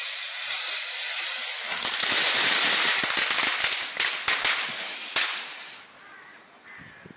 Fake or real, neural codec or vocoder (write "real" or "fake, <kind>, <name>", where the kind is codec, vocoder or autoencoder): real